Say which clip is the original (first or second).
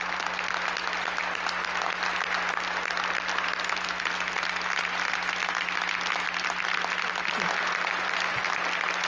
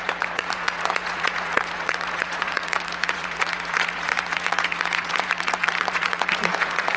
first